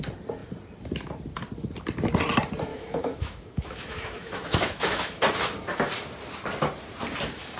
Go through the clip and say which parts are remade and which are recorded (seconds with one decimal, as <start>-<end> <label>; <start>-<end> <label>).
0.0-2.7 recorded; 2.7-5.2 remade; 5.2-7.6 recorded